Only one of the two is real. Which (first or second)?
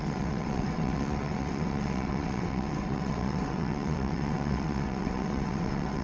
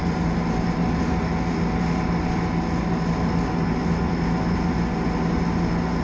second